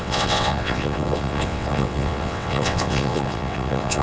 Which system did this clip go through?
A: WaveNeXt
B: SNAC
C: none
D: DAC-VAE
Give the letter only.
A